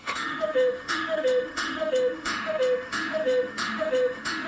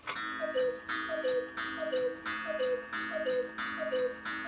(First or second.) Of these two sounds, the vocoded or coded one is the first